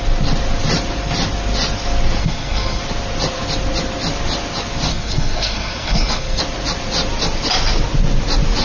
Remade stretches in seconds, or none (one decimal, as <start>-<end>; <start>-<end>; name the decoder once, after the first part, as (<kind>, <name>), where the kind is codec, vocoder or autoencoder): 2.2-2.8 (codec, SNAC); 4.9-6.4